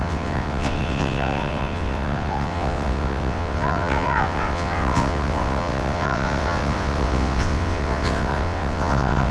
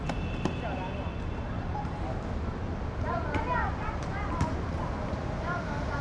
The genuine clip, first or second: second